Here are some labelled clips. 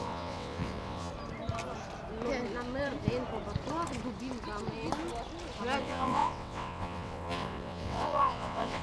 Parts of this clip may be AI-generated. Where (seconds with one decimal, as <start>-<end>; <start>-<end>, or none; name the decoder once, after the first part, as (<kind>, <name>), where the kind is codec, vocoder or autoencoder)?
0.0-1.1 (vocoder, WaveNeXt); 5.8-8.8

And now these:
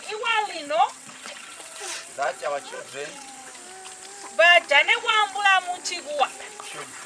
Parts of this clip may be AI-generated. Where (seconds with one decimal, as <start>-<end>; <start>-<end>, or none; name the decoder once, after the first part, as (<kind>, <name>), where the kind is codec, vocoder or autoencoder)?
0.0-3.5 (vocoder, WaveNeXt); 4.7-5.2; 6.2-7.1

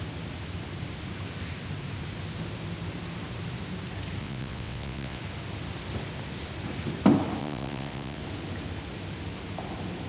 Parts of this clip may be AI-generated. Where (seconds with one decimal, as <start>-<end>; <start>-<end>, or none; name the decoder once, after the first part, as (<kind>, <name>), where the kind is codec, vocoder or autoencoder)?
4.2-5.2 (vocoder, WaveNeXt); 7.4-8.2

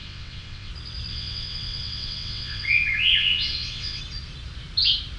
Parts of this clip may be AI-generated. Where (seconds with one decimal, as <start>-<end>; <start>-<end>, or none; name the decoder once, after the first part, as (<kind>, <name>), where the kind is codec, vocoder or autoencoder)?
0.0-0.7 (vocoder, WaveNeXt); 1.1-4.0

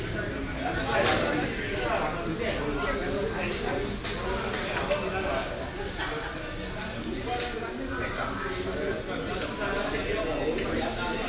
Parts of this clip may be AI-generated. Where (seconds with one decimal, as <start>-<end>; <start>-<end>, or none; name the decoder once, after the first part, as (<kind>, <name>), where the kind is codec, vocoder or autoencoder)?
none

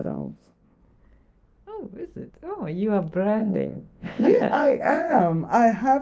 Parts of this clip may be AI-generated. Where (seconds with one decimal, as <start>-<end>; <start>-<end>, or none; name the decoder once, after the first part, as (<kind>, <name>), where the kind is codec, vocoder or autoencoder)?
0.0-0.8 (vocoder, WaveNeXt); 3.4-5.2

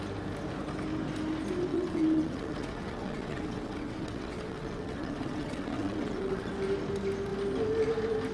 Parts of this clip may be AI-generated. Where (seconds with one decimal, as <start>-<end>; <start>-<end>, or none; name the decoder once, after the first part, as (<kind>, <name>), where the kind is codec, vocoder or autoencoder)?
1.7-6.5 (vocoder, WaveNeXt)